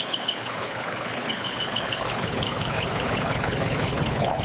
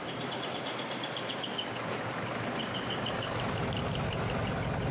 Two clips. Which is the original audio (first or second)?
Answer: second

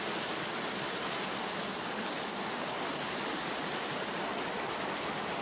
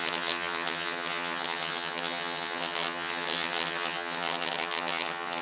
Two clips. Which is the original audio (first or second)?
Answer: first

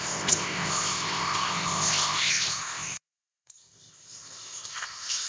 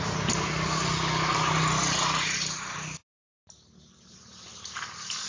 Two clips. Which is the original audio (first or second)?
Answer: second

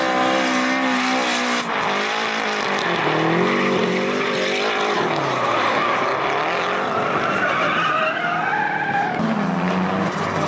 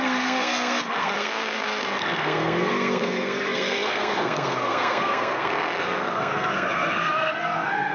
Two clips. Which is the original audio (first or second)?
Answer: first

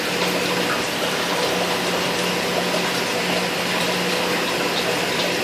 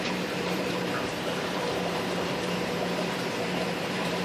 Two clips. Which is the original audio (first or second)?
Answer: first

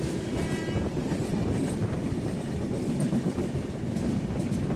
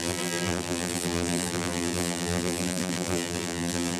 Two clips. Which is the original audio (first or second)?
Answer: first